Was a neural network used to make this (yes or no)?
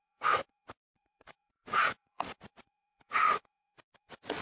yes